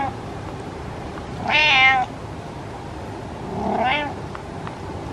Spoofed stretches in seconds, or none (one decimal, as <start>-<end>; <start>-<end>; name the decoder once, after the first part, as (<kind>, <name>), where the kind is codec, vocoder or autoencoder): 0.0-1.6 (vocoder, BigVGAN v2)